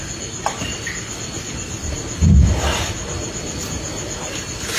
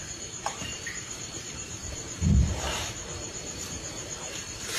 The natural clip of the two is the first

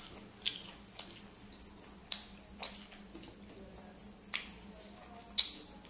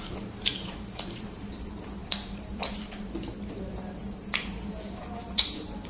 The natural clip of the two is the first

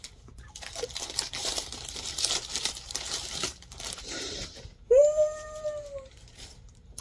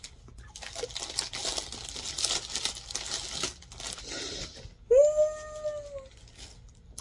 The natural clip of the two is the second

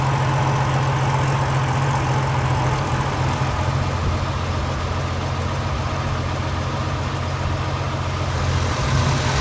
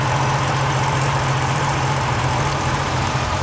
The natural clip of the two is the first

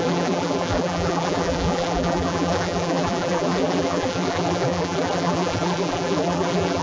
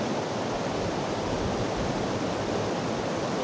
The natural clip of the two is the second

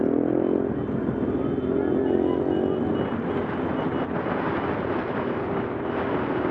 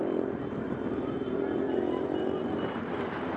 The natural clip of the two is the first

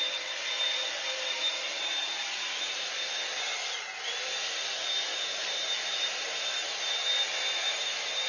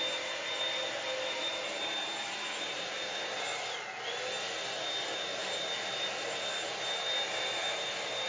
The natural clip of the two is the second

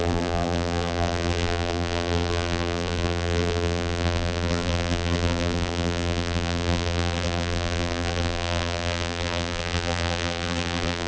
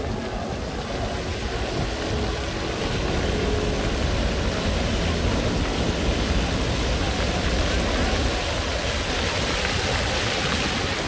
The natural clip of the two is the second